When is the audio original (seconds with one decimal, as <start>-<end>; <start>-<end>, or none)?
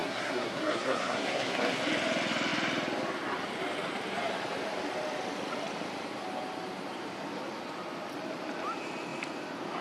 1.8-9.8